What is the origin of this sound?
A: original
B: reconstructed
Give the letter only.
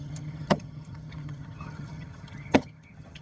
B